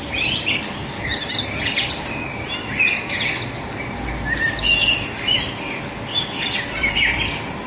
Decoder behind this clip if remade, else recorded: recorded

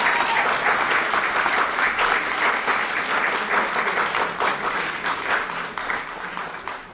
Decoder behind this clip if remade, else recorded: recorded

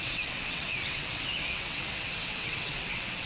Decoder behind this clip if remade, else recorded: remade, vocoder, WaveNeXt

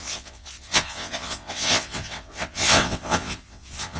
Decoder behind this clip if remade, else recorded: remade, vocoder, WaveNeXt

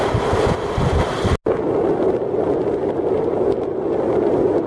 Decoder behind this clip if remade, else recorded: recorded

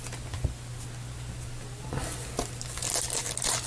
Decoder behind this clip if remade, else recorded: recorded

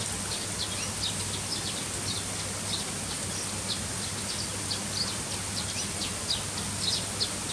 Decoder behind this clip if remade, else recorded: recorded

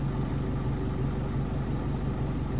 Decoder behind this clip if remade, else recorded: recorded